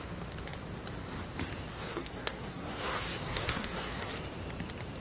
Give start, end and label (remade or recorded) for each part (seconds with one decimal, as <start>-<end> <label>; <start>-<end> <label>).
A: 0.0-1.7 recorded; 1.7-4.1 remade; 4.1-5.0 recorded